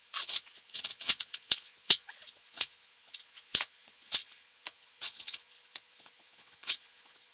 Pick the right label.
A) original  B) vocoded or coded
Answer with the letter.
B